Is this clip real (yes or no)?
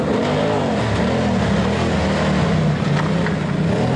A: yes